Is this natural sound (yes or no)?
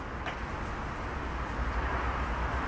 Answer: yes